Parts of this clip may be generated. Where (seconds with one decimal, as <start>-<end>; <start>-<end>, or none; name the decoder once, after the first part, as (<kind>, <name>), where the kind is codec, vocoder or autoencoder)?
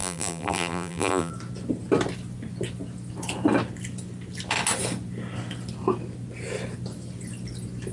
0.0-1.3 (vocoder, BigVGAN v2)